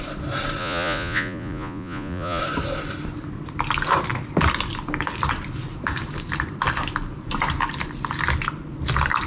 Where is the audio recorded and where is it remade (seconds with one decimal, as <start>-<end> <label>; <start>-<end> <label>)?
0.0-0.6 recorded; 0.6-2.4 remade; 2.4-9.3 recorded